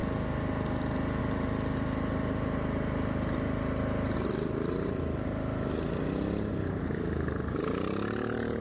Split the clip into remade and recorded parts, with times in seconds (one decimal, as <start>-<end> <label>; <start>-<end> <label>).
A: 0.0-8.6 recorded